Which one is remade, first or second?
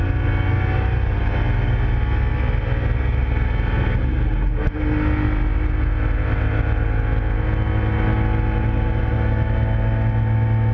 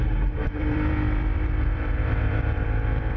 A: second